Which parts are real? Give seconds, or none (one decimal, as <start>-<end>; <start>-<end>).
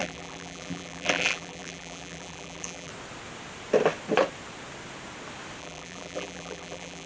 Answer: 2.9-5.6